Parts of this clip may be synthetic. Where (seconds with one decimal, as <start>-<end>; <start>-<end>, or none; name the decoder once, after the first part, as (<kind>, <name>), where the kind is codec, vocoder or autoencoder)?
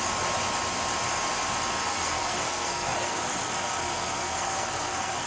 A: 1.9-5.3 (codec, SNAC)